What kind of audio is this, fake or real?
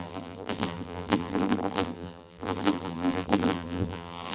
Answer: fake